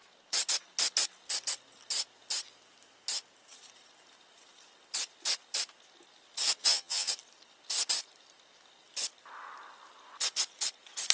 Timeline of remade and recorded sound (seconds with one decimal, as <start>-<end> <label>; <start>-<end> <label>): 0.0-6.6 recorded; 6.6-7.1 remade; 7.1-11.1 recorded